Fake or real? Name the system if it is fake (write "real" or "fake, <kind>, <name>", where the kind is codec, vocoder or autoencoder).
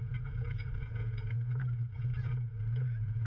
fake, vocoder, Vocos